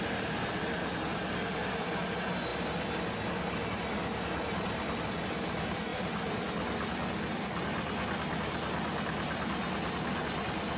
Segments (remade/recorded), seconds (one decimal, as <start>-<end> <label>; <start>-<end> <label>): 0.0-10.8 recorded